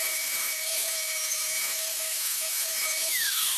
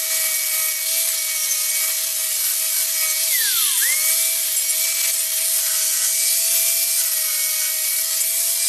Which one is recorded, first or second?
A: second